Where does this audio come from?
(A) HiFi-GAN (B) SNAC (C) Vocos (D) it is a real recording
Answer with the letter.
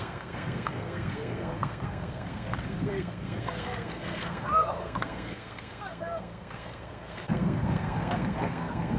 B